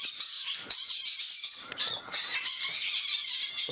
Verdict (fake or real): real